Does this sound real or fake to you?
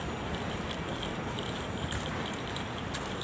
real